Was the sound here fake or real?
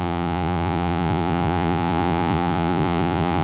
fake